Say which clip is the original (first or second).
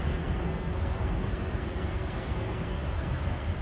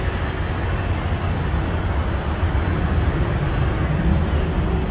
second